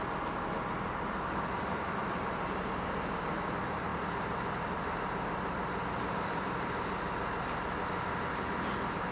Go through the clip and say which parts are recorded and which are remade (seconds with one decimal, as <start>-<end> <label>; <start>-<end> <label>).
0.0-9.1 recorded